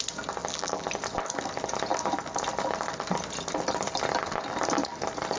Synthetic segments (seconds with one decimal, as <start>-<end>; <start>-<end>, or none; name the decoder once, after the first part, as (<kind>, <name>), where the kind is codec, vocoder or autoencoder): 0.4-0.9 (vocoder, BigVGAN v2)